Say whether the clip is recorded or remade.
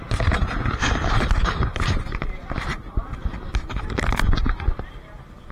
recorded